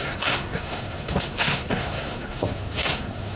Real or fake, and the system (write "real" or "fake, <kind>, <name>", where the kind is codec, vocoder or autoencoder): fake, codec, SNAC